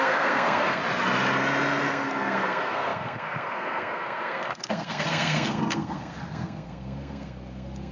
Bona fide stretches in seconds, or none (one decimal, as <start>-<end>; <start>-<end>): 0.8-1.9